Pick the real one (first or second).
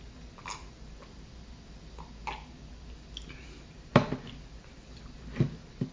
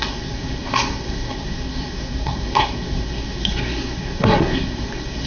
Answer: first